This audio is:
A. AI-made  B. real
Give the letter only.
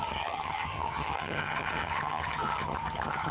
A